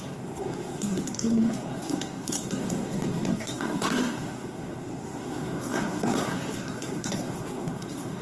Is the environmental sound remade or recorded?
remade